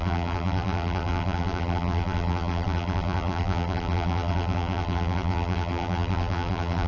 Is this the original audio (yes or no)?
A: no